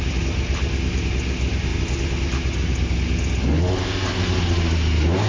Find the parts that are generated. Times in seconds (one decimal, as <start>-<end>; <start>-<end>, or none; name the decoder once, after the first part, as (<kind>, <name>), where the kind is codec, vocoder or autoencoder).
none